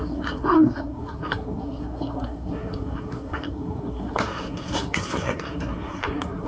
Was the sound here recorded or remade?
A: remade